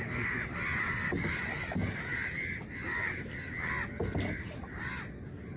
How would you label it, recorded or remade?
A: recorded